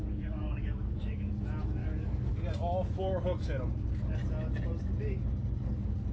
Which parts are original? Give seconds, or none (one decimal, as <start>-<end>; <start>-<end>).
1.3-1.8; 2.3-6.1